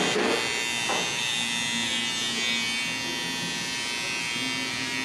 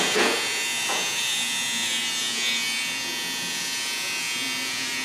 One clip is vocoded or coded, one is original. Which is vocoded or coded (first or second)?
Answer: second